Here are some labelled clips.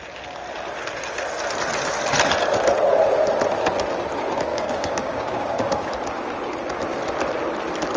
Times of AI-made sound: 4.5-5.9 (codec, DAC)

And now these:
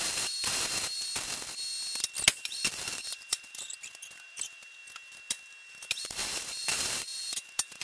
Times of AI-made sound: 0.0-1.1 (vocoder, BigVGAN v2); 2.4-4.8; 6.0-7.8

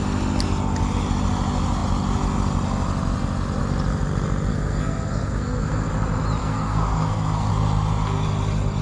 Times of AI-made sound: 4.5-5.9 (codec, SNAC); 6.4-7.5

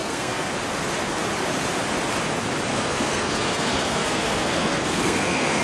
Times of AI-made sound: 0.0-0.5 (codec, SNAC); 2.7-5.6

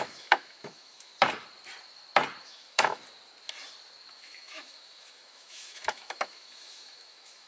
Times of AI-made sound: 0.0-1.1 (autoencoder, DAC-VAE); 2.4-3.0; 4.1-7.5